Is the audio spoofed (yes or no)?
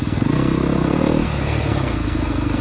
yes